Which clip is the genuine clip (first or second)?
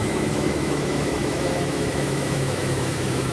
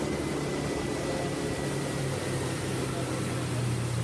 second